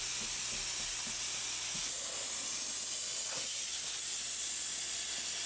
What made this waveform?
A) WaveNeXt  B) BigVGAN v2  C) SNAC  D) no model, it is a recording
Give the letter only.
D